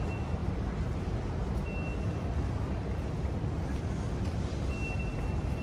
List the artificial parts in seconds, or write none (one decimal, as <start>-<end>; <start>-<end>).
none